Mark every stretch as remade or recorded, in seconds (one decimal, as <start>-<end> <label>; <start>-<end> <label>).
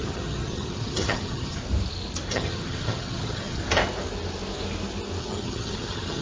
0.0-1.6 remade; 1.6-2.3 recorded; 2.3-3.6 remade; 3.6-5.2 recorded; 5.2-6.2 remade